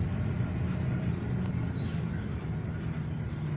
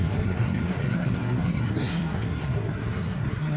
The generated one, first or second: second